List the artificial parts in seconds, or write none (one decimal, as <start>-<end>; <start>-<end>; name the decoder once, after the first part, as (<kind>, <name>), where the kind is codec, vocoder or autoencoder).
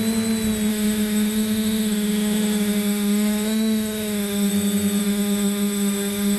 0.7-4.5 (autoencoder, DAC-VAE); 5.0-6.4